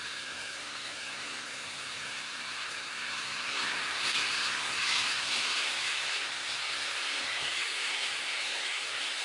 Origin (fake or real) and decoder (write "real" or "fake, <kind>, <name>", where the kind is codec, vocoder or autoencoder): fake, codec, SNAC